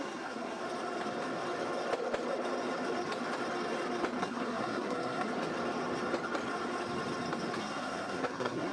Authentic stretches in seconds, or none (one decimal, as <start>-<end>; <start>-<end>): 0.6-4.2; 5.3-7.6